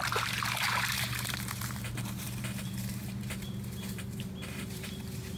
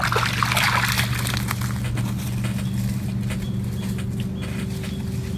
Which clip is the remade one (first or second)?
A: first